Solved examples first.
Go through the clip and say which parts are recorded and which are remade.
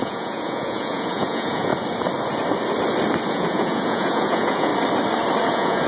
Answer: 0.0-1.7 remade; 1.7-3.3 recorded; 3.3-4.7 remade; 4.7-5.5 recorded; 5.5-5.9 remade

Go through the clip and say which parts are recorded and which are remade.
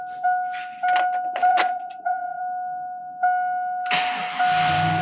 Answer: 0.0-1.5 recorded; 1.5-2.4 remade; 2.4-5.0 recorded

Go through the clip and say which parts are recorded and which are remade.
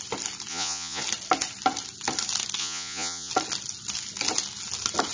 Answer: 0.0-0.5 recorded; 0.5-1.0 remade; 1.0-2.6 recorded; 2.6-3.3 remade; 3.3-5.1 recorded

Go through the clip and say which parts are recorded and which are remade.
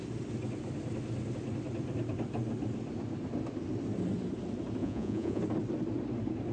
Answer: 0.0-4.8 recorded; 4.8-5.4 remade; 5.4-6.5 recorded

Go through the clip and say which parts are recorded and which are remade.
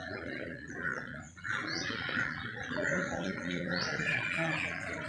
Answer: 0.0-5.1 remade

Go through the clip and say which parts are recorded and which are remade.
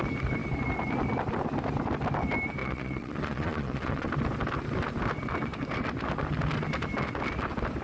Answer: 0.0-2.6 recorded; 2.6-4.1 remade; 4.1-7.8 recorded